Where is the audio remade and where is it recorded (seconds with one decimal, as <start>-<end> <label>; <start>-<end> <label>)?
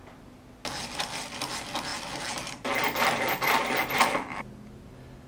0.0-5.3 recorded